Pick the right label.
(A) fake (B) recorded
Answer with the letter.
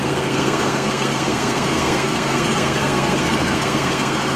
A